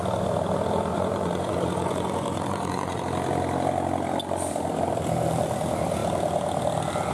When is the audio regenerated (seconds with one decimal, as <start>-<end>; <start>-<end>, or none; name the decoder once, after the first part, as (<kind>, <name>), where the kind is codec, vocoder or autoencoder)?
0.9-3.0 (vocoder, Vocos)